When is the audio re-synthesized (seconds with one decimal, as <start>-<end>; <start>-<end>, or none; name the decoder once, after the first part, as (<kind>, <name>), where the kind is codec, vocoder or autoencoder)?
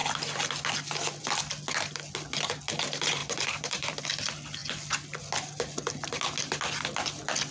3.2-4.0 (vocoder, BigVGAN v2)